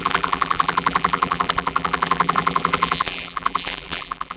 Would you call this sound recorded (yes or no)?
no